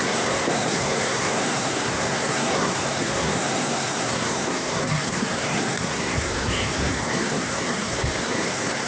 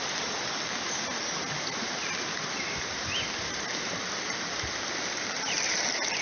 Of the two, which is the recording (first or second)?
second